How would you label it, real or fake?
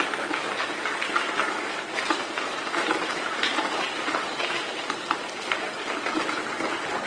fake